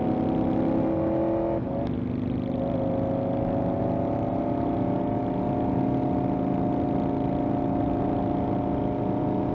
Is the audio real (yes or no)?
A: yes